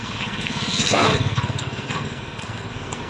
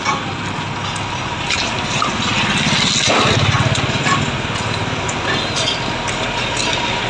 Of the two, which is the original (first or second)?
second